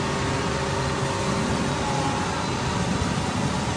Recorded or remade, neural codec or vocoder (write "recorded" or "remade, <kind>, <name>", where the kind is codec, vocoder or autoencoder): recorded